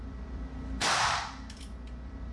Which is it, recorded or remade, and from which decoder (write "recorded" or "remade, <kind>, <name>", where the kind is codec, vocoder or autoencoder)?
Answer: remade, vocoder, BigVGAN v2